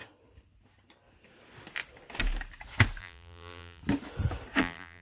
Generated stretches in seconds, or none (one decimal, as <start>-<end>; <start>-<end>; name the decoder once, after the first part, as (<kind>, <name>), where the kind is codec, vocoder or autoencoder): 3.0-3.8 (vocoder, BigVGAN v2); 4.6-5.0